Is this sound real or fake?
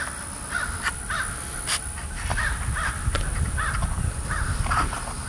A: real